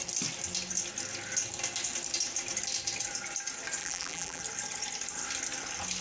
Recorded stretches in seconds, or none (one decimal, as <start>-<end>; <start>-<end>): 0.0-3.8; 4.4-6.0